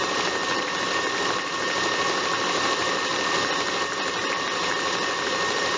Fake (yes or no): no